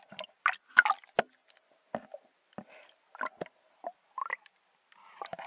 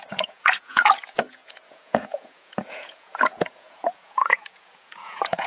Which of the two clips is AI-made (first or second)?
second